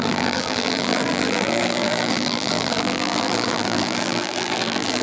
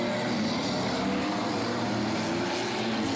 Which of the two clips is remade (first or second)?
first